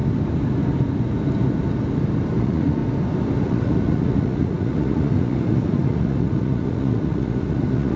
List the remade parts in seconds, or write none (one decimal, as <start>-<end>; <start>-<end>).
2.4-2.8; 3.4-8.0